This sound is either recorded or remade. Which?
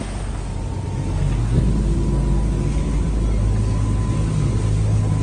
recorded